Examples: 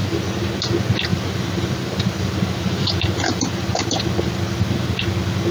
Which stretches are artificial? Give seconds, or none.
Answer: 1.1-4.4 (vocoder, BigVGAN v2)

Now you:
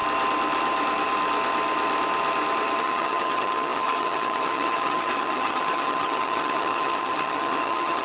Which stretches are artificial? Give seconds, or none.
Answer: 2.8-8.0 (vocoder, HiFi-GAN)